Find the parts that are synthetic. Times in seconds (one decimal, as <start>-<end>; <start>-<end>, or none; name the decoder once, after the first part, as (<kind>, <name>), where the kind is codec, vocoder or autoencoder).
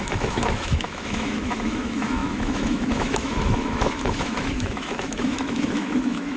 0.0-6.4 (autoencoder, DAC-VAE)